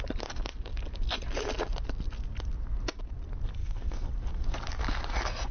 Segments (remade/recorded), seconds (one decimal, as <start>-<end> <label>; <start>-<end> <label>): 0.0-3.6 recorded; 3.6-4.1 remade; 4.1-5.5 recorded